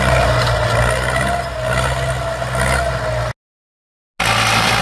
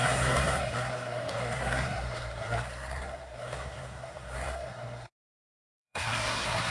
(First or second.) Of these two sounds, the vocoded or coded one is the second